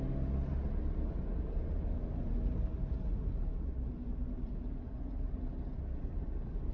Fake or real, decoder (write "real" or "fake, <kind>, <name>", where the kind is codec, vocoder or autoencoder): real